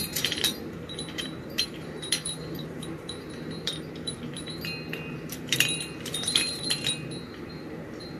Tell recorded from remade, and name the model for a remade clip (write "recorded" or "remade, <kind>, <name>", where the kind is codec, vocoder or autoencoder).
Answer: remade, vocoder, BigVGAN v2